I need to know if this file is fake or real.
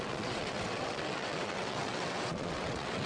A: fake